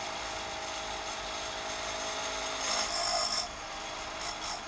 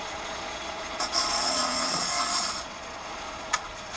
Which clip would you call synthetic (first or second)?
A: second